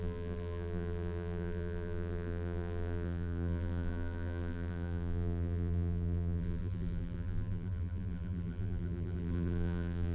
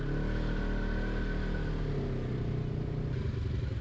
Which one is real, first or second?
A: second